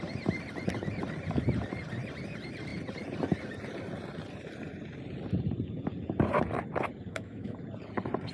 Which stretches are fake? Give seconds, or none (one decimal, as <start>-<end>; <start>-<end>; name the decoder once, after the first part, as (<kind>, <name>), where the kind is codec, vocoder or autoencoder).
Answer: 7.1-7.6 (autoencoder, DAC-VAE)